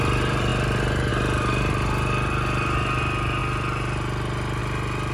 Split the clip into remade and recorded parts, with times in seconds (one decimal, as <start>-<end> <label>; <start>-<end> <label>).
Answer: 0.0-5.1 recorded